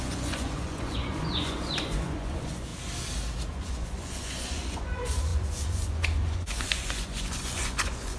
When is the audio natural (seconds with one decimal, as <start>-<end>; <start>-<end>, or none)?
2.7-3.5